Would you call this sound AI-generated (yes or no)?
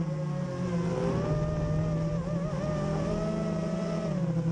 no